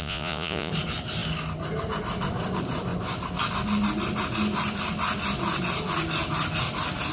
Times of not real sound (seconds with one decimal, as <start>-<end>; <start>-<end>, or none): 0.0-0.7